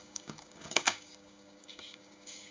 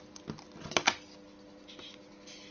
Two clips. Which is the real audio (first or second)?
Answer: second